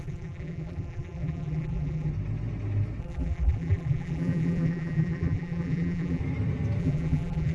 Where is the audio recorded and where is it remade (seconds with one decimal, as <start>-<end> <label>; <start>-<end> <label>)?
0.0-2.1 remade; 2.1-3.0 recorded; 3.0-6.2 remade; 6.2-6.8 recorded; 6.8-7.5 remade